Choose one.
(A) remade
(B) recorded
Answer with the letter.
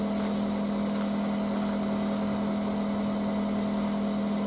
B